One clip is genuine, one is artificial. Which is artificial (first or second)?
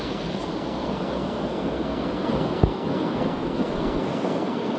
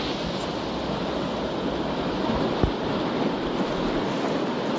first